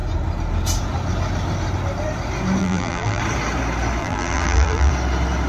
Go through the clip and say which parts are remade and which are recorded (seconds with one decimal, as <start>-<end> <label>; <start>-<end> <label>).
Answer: 0.0-2.6 recorded; 2.6-3.2 remade; 3.2-4.0 recorded; 4.0-4.9 remade; 4.9-5.5 recorded